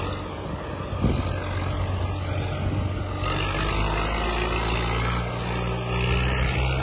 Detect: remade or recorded recorded